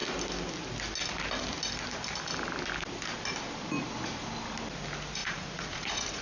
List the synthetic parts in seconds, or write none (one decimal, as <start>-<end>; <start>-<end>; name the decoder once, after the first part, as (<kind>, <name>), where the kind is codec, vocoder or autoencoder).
5.2-6.2 (vocoder, Vocos)